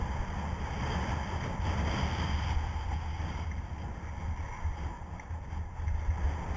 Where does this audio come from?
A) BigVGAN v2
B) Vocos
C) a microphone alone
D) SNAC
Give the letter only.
C